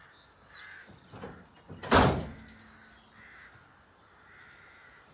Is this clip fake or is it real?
real